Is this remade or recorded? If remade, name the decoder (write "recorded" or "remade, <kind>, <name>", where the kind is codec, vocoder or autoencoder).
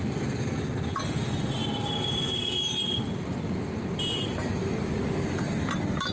remade, vocoder, BigVGAN v2